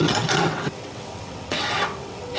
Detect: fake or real fake